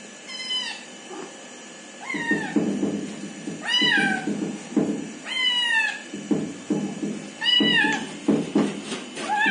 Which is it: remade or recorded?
recorded